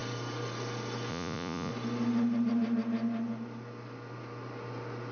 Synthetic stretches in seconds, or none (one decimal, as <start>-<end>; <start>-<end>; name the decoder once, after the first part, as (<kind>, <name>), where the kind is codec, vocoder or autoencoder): 1.1-1.7 (vocoder, Vocos)